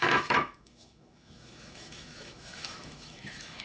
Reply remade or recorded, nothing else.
remade